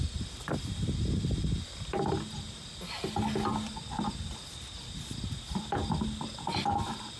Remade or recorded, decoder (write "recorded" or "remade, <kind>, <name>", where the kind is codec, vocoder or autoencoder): recorded